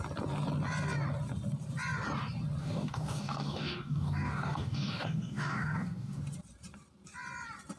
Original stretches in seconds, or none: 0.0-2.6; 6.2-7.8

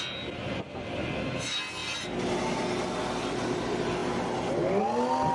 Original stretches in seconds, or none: 0.0-5.3

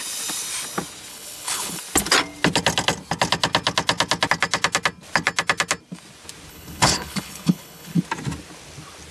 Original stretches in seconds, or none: 0.0-1.1; 1.8-6.5; 8.0-9.1

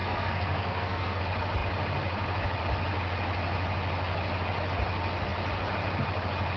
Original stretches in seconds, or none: 1.2-6.6

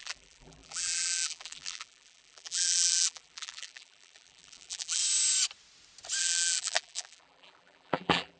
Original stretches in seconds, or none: 5.0-6.2

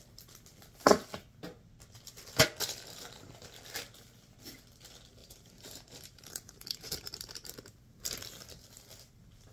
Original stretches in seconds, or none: 0.0-5.2; 7.2-9.5

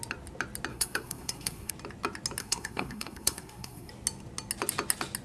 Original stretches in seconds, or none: 0.0-0.7; 1.7-2.4; 3.9-5.2